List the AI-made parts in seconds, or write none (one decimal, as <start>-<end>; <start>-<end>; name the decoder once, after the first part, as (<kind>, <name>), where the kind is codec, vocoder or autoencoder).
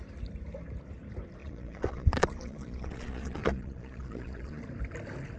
1.4-4.6 (vocoder, Vocos)